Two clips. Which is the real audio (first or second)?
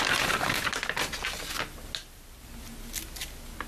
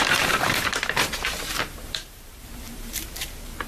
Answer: first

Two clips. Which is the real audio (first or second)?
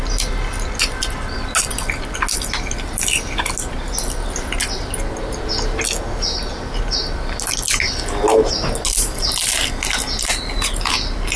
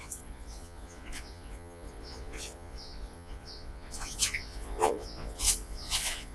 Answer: first